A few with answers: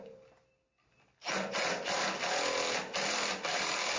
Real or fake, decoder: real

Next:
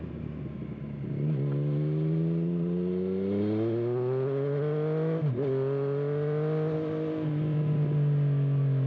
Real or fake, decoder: real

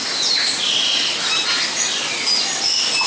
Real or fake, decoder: real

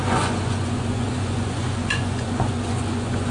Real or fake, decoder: fake, vocoder, Vocos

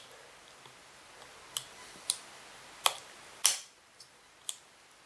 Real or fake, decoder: real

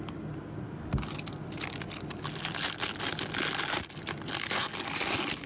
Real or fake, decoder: real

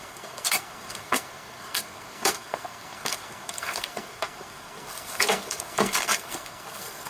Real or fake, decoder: fake, codec, SNAC